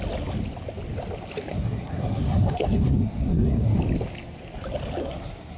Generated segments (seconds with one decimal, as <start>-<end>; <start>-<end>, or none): 1.5-3.8; 5.0-5.6